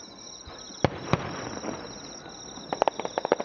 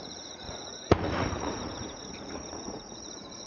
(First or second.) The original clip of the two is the first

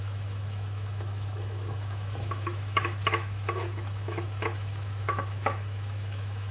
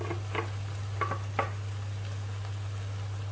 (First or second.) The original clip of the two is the second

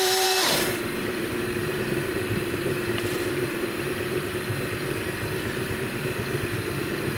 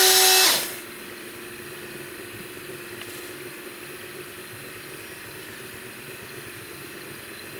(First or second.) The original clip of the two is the second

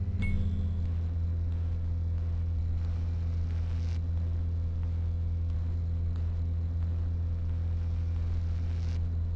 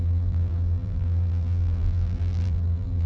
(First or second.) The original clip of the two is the first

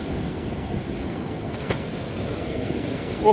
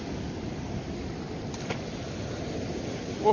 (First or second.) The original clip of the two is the second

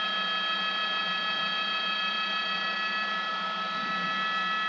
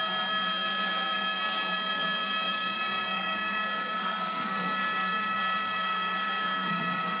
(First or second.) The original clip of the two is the first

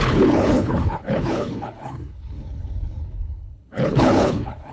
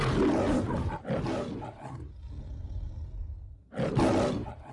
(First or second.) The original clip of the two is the second